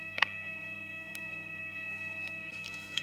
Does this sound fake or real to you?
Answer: fake